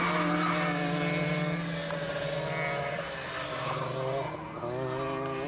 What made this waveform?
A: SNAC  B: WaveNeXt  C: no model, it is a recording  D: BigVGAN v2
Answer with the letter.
C